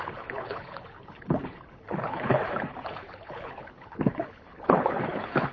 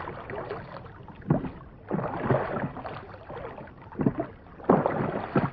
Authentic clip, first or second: second